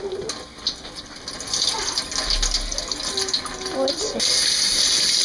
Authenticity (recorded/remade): recorded